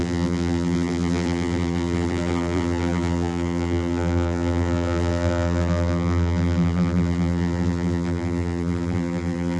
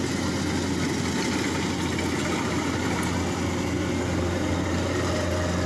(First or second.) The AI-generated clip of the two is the first